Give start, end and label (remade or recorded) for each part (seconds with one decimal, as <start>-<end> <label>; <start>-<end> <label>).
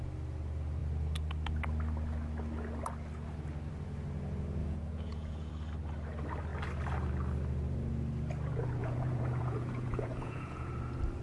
0.0-4.6 recorded; 4.6-5.5 remade; 5.5-8.8 recorded; 8.8-10.7 remade; 10.7-11.2 recorded